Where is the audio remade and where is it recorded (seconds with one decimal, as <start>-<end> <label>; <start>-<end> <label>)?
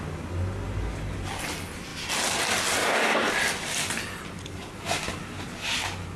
0.0-2.8 recorded; 2.8-3.3 remade; 3.3-6.2 recorded